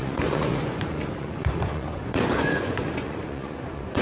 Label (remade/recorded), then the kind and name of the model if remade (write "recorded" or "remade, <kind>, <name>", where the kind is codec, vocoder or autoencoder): remade, vocoder, Vocos